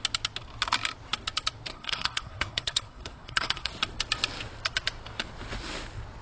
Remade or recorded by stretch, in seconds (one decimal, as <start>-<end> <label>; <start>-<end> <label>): 0.0-1.7 recorded; 1.7-3.7 remade; 3.7-6.2 recorded